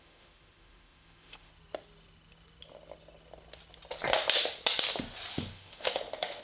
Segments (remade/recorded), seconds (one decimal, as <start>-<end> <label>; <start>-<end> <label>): 0.0-1.5 remade; 1.5-5.3 recorded; 5.3-6.4 remade